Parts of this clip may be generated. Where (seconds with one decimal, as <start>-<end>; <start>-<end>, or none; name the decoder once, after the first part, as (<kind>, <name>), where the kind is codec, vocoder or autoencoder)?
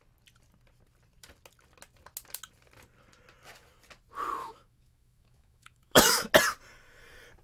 4.4-6.3 (autoencoder, DAC-VAE)